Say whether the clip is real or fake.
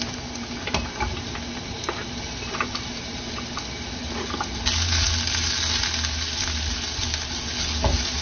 real